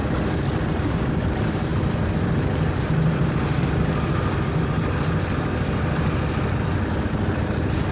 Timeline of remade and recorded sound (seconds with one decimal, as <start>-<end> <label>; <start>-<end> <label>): 0.0-0.6 recorded; 0.6-1.7 remade; 1.7-2.8 recorded; 2.8-3.2 remade; 3.2-7.3 recorded; 7.3-7.9 remade